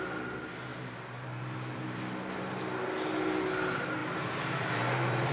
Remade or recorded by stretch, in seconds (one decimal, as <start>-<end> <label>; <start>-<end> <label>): 0.0-0.7 recorded; 0.7-2.0 remade; 2.0-4.0 recorded; 4.0-5.3 remade